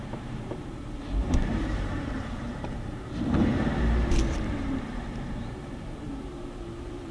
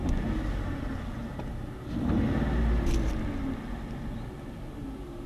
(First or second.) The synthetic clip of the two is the first